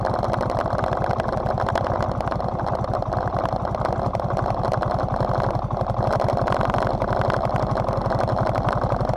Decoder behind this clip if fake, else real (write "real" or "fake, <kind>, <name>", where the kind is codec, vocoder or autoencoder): real